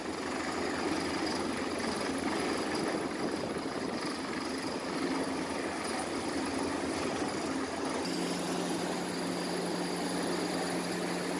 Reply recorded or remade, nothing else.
recorded